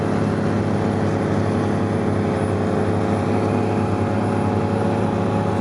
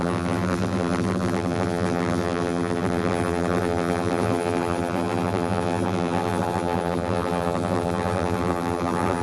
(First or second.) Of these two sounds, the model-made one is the second